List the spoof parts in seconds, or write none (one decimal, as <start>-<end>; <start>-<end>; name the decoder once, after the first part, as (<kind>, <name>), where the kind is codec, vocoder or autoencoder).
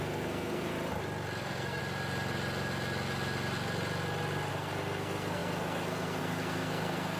0.0-0.7 (codec, SNAC); 1.4-1.8; 4.5-7.2